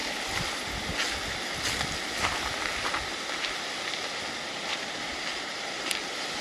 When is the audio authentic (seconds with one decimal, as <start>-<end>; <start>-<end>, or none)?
0.0-3.1